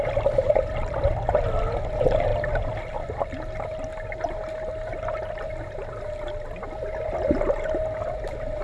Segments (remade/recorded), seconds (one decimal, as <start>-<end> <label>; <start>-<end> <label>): 0.0-8.6 recorded